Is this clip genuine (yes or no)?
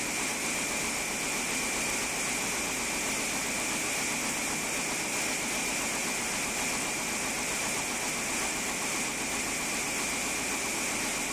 yes